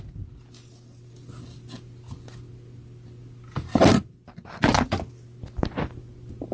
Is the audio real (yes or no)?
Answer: yes